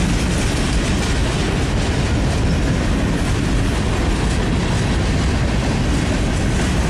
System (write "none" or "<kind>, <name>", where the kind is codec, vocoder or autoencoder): none